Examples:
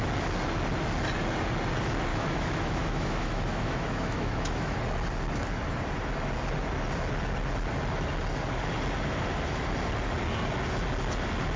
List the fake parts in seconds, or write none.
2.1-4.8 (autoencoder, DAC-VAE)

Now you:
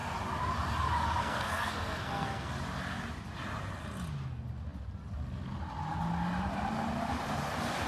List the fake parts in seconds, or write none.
1.2-2.5 (codec, SNAC)

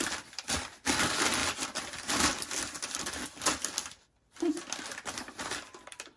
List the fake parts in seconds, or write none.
none

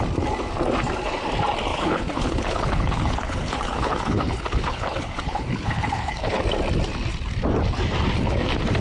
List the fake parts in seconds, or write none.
1.7-6.4 (codec, HILCodec)

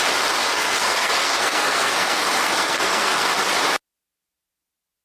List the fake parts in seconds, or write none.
0.4-3.4 (codec, SNAC)

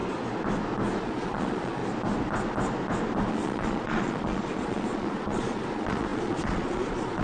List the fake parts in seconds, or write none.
1.0-1.8 (vocoder, Vocos); 3.3-7.2

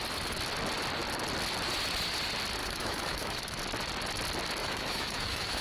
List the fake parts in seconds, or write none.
2.6-3.6 (autoencoder, DAC-VAE); 4.6-5.6